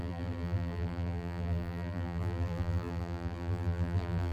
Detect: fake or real fake